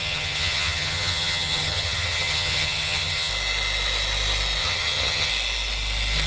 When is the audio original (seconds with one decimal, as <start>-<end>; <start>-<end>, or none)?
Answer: 3.3-4.6; 5.3-6.3